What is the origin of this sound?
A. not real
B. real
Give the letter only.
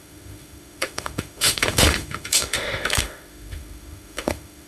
A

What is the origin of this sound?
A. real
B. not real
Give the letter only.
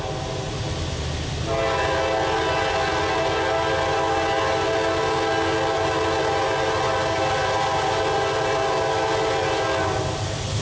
A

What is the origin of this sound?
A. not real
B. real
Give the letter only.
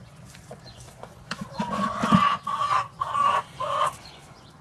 A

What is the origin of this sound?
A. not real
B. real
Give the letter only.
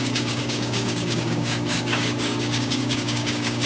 A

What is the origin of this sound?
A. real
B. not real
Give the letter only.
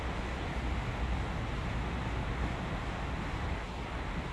A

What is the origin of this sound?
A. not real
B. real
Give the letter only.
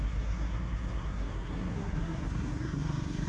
A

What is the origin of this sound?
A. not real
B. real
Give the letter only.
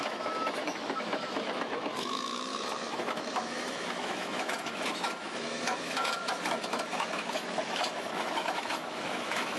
A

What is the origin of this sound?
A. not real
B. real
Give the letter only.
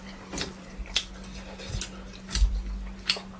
B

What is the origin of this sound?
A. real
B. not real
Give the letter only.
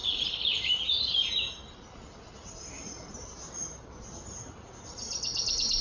A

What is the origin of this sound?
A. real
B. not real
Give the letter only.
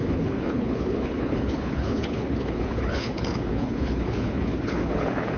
B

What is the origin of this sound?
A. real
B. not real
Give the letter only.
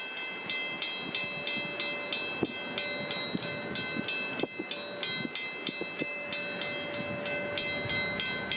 A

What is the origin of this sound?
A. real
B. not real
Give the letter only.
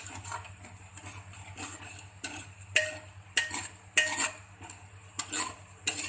A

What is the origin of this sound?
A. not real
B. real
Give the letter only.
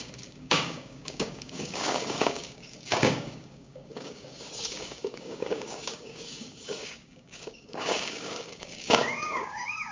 A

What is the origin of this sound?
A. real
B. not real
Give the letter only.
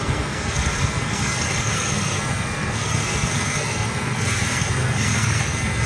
B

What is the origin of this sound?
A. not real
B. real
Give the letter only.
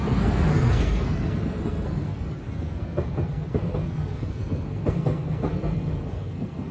A